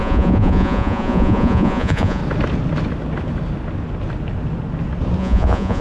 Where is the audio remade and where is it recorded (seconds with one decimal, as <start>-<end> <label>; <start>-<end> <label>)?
0.0-2.2 remade; 2.2-5.2 recorded; 5.2-5.8 remade